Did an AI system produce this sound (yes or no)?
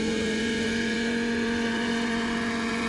yes